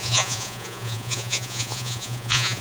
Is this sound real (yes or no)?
no